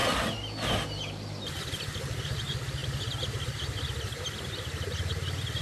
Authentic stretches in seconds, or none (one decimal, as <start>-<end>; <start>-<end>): 0.0-5.6